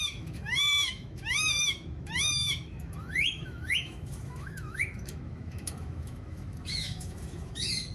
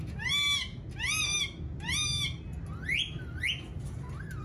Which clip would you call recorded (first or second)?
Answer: second